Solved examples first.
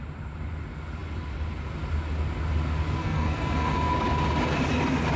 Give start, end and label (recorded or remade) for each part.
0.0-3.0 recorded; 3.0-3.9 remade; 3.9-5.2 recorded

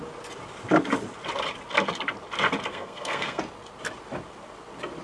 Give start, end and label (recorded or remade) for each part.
0.0-2.7 recorded; 2.7-3.4 remade; 3.4-5.0 recorded

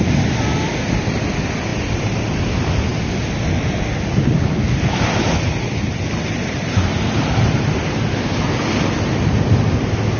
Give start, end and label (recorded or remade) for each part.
0.0-10.2 recorded

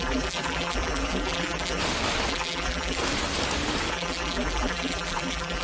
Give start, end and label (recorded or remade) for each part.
0.0-1.8 remade; 1.8-2.3 recorded; 2.3-3.0 remade; 3.0-3.9 recorded; 3.9-5.6 remade

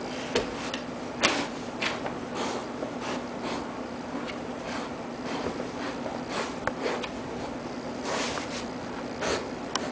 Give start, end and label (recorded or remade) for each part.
0.0-9.9 recorded